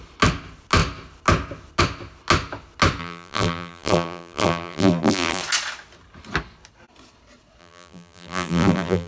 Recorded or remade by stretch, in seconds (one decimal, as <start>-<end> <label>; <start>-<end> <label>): 0.0-3.0 recorded; 3.0-5.4 remade; 5.4-7.6 recorded; 7.6-9.1 remade